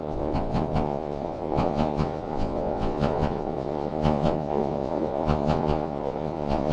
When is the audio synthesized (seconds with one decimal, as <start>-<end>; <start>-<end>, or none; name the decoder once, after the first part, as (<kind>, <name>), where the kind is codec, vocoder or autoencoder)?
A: 0.0-6.7 (vocoder, Vocos)